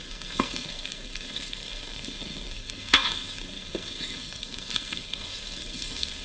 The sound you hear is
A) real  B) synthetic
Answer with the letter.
B